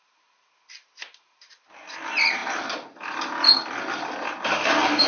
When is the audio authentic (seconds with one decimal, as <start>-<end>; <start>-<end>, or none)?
0.0-5.1